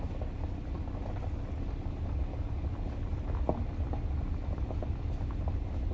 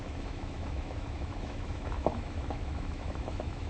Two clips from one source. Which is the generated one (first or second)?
second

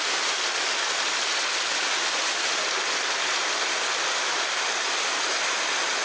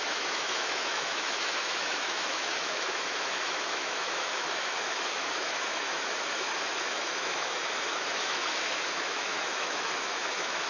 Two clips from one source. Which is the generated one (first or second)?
second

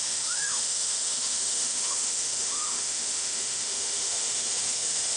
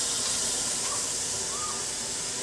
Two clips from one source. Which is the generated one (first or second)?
first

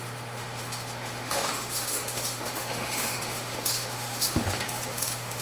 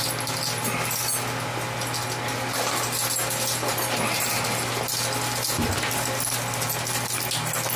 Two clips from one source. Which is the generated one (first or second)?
first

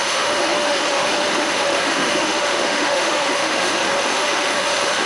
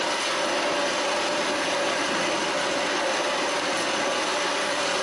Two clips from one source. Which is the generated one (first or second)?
first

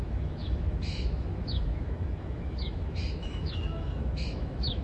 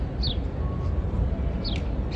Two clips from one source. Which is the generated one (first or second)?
first